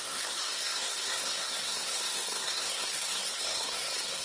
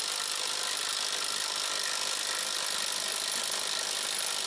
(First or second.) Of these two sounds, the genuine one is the second